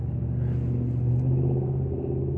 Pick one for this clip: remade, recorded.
recorded